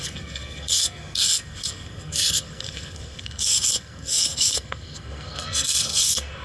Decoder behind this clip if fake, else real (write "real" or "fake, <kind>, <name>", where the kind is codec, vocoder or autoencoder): fake, codec, SNAC